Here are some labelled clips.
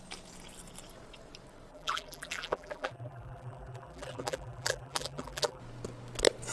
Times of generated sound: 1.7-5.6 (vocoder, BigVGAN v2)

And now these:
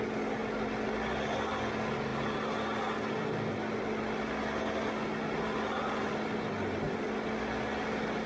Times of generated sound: none